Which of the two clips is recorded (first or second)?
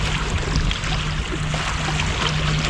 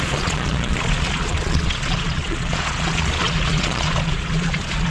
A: first